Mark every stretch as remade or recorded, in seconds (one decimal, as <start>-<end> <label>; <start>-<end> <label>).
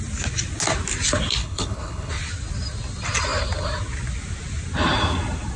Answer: 0.0-1.4 recorded; 1.4-2.1 remade; 2.1-5.6 recorded